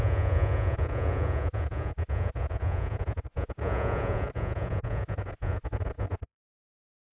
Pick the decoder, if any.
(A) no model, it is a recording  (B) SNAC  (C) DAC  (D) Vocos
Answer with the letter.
D